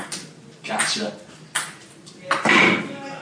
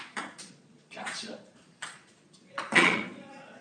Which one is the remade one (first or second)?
second